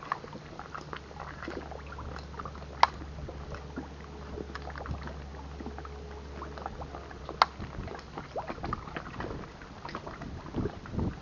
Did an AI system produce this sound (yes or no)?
no